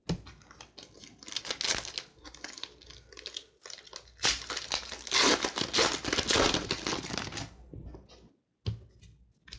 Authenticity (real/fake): real